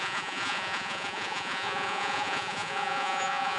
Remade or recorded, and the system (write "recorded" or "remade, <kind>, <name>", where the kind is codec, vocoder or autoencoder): remade, vocoder, Vocos